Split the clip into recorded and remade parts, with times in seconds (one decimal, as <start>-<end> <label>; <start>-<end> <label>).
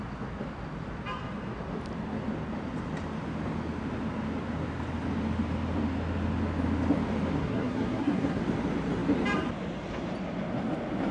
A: 0.0-7.4 recorded; 7.4-8.4 remade; 8.4-11.1 recorded